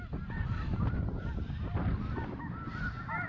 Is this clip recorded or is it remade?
recorded